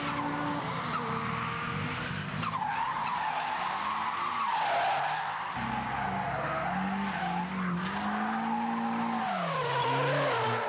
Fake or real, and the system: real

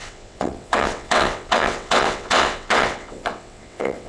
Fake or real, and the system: fake, vocoder, WaveNeXt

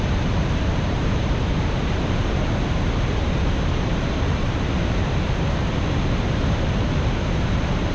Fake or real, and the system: fake, vocoder, BigVGAN v2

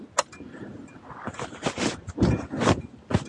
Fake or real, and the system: real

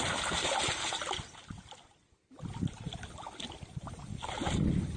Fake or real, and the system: real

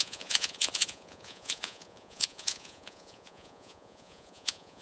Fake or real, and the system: fake, vocoder, Vocos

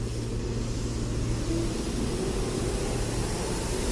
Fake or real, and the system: real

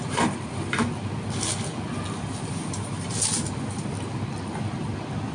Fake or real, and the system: real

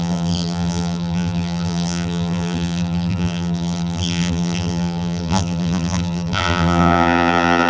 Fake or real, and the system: fake, vocoder, BigVGAN v2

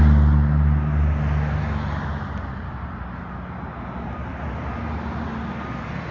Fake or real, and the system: real